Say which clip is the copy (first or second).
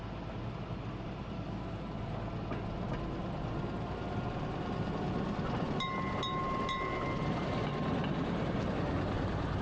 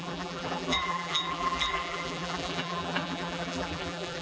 second